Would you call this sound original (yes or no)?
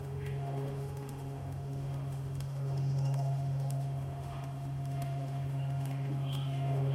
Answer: no